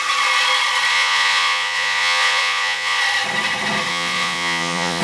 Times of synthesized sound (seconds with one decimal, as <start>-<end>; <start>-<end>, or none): 0.9-3.0; 3.9-5.0